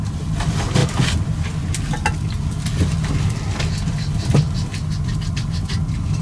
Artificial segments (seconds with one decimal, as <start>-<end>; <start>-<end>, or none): none